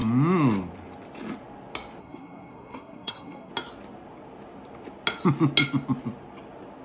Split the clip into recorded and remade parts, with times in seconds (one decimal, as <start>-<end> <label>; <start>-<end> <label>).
0.0-2.0 recorded; 2.0-3.5 remade; 3.5-6.8 recorded